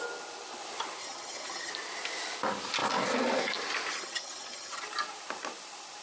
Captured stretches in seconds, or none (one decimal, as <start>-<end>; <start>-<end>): 0.0-1.0; 1.7-3.9; 4.8-6.0